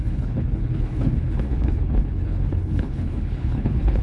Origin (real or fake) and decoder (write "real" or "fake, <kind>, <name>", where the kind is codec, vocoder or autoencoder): fake, codec, HILCodec